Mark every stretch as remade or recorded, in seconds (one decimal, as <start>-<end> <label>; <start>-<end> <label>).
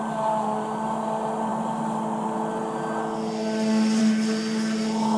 0.0-5.2 recorded